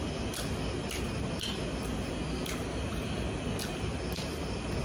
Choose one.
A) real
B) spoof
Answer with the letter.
A